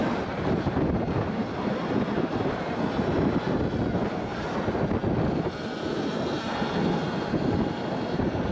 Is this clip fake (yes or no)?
no